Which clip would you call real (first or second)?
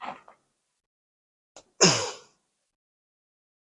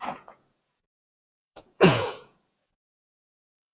first